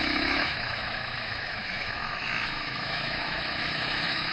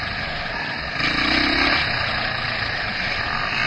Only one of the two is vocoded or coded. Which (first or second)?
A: first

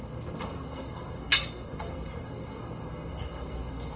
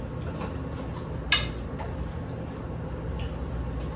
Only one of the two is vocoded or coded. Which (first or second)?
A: first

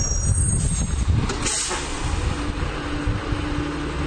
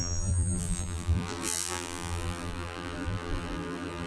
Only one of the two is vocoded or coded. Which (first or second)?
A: second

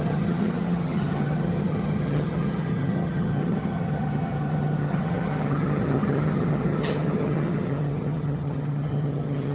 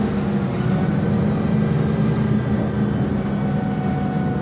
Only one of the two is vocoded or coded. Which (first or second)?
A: first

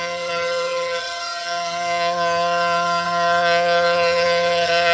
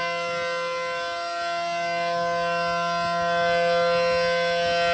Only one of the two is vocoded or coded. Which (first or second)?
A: first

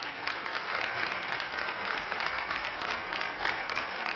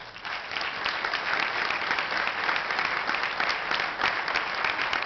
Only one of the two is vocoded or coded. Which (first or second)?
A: first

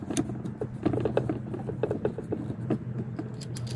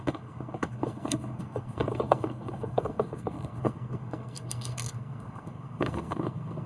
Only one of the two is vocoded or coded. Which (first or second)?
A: second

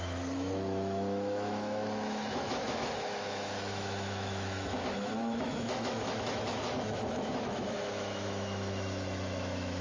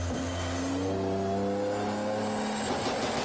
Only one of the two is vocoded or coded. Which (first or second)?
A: first